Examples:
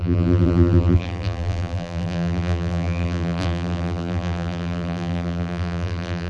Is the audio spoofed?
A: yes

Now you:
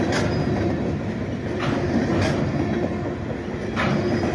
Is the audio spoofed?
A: no